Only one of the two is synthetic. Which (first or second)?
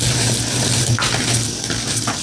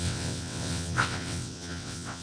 second